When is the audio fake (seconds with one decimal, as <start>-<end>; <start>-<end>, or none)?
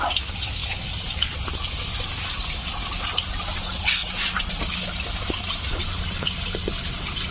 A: 4.0-5.6